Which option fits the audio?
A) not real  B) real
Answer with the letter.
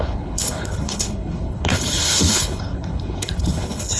A